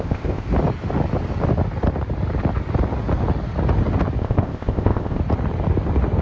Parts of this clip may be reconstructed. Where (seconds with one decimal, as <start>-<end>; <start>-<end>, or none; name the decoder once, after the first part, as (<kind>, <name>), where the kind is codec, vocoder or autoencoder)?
0.0-0.5 (codec, ZipCodec); 4.2-5.2